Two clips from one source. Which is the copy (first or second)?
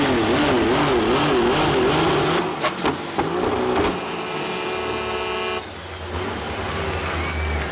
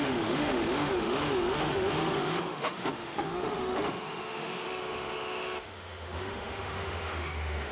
second